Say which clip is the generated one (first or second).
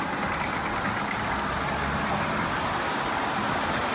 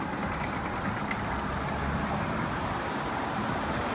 second